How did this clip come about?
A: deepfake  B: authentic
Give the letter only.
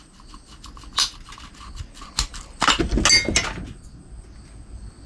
B